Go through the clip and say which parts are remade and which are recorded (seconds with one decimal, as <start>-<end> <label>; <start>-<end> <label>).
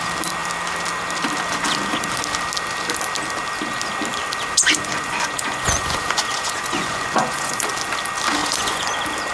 0.0-4.6 recorded; 4.6-7.7 remade; 7.7-8.4 recorded; 8.4-8.9 remade; 8.9-9.3 recorded